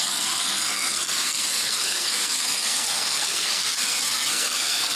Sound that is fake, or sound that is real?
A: fake